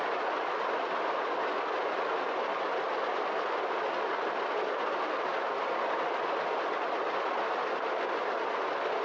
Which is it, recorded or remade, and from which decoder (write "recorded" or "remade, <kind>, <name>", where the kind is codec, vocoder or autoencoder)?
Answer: recorded